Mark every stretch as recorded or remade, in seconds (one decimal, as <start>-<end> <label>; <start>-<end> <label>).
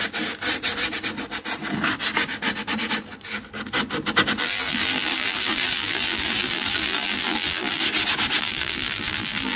0.0-4.4 recorded; 4.4-7.8 remade; 7.8-8.4 recorded; 8.4-9.6 remade